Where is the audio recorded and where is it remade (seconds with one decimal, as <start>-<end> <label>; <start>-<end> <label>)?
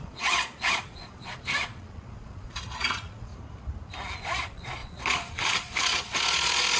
0.0-3.3 remade; 3.3-4.2 recorded; 4.2-6.8 remade